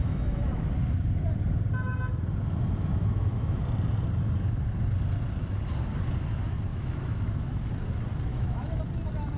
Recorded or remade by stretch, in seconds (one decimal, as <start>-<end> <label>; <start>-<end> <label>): 0.0-0.7 remade; 0.7-2.9 recorded; 2.9-3.6 remade; 3.6-6.7 recorded; 6.7-7.7 remade; 7.7-8.3 recorded; 8.3-8.8 remade; 8.8-9.4 recorded